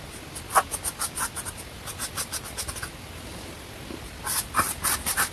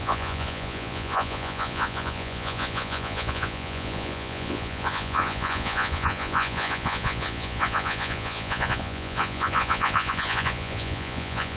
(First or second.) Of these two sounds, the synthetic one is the second